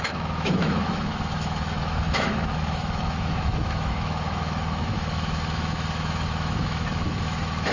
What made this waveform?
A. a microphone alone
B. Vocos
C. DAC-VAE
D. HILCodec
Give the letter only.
C